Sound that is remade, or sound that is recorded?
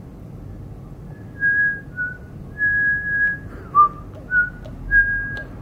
recorded